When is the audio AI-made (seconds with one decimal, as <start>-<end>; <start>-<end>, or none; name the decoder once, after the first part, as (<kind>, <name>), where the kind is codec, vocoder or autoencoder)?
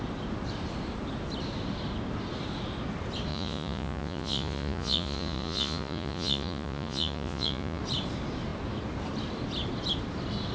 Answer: 3.3-7.8 (vocoder, Vocos)